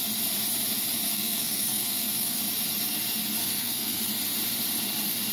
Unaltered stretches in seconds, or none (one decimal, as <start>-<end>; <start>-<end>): 0.0-1.1; 2.4-3.4; 4.1-5.3